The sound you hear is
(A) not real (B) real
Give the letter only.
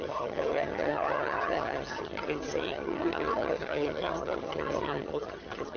A